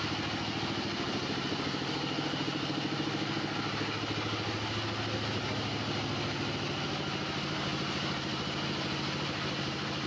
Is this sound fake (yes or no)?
no